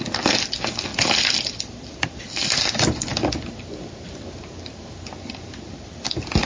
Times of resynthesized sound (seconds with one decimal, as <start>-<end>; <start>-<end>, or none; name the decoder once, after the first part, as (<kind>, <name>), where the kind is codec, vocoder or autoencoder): 0.0-3.1 (vocoder, BigVGAN v2); 3.8-6.5